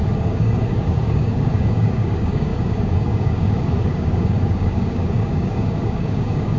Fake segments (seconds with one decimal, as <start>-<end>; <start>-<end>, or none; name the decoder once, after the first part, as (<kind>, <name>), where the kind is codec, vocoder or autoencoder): 0.0-6.6 (codec, DAC)

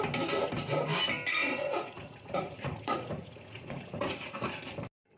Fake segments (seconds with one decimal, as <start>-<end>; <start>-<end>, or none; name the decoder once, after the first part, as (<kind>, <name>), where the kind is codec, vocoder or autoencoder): 1.4-4.5 (vocoder, Vocos)